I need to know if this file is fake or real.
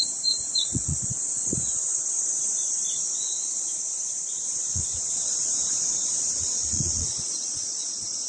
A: fake